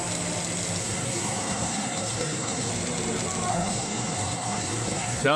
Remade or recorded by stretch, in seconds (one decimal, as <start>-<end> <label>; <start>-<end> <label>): 0.0-0.8 recorded; 0.8-2.7 remade; 2.7-3.5 recorded; 3.5-5.4 remade